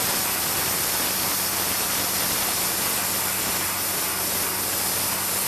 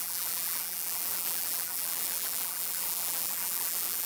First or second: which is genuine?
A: first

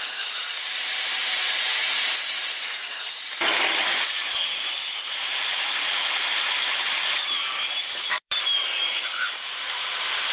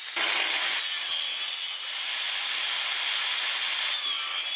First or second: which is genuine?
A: second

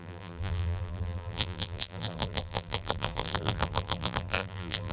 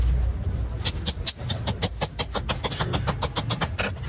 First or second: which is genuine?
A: second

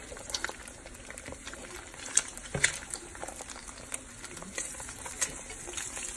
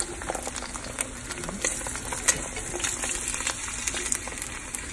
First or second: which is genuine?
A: second